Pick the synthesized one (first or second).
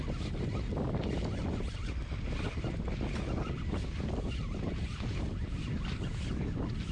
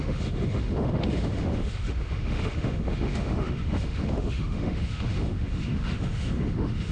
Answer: second